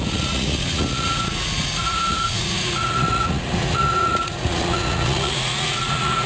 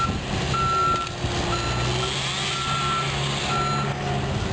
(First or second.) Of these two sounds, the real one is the second